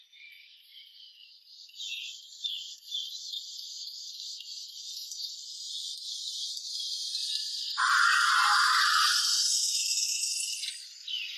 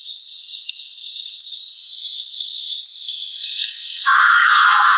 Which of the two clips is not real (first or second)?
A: second